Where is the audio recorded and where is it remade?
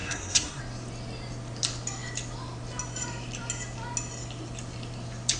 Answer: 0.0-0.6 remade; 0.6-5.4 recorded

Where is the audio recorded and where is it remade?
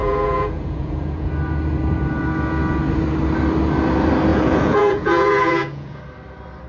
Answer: 0.0-1.3 remade; 1.3-4.3 recorded; 4.3-6.0 remade; 6.0-6.7 recorded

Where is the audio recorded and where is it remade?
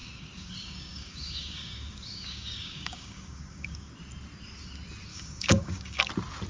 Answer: 0.0-3.9 remade; 3.9-5.1 recorded; 5.1-6.1 remade; 6.1-6.5 recorded